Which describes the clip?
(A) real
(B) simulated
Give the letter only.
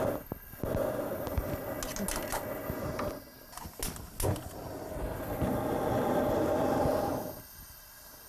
A